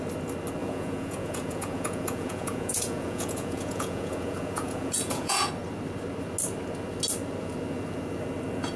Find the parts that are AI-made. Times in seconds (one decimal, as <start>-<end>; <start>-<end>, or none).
0.6-5.5